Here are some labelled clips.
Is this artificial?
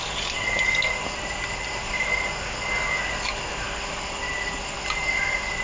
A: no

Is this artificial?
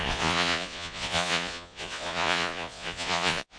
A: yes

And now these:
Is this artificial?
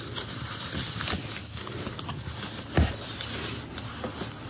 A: no